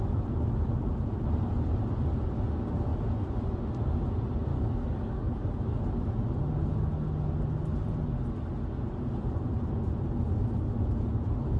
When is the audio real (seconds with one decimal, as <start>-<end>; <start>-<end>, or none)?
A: 0.0-4.5; 5.8-11.6